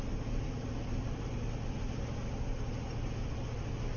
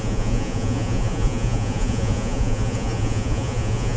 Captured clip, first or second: first